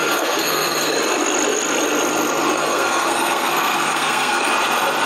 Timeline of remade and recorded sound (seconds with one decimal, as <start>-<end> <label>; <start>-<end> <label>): 0.0-0.9 remade; 0.9-2.6 recorded; 2.6-4.5 remade; 4.5-5.1 recorded